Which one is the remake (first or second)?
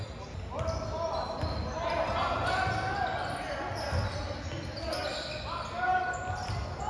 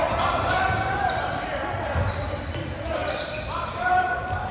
second